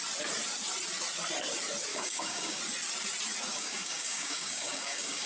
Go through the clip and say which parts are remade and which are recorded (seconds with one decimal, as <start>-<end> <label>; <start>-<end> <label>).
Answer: 0.0-1.9 recorded; 1.9-2.6 remade; 2.6-3.5 recorded; 3.5-5.3 remade